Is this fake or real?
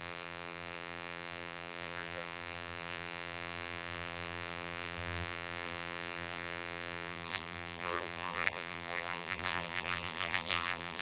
fake